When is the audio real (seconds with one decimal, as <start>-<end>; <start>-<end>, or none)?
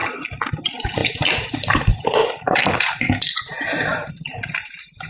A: 0.0-0.5